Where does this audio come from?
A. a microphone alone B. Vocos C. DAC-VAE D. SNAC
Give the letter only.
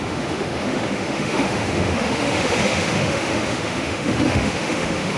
C